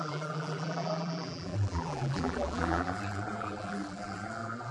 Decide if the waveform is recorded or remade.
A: remade